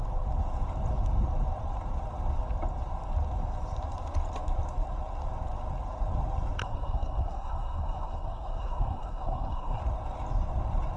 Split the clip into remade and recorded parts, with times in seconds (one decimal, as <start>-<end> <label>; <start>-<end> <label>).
0.0-6.6 recorded; 6.6-9.8 remade; 9.8-11.0 recorded